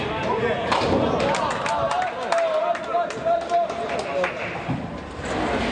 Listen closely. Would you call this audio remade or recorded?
recorded